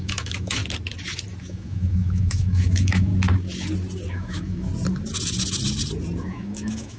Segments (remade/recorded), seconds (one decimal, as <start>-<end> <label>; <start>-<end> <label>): 0.0-0.6 remade; 0.6-1.4 recorded; 1.4-3.1 remade; 3.1-4.1 recorded; 4.1-4.7 remade; 4.7-6.2 recorded; 6.2-7.0 remade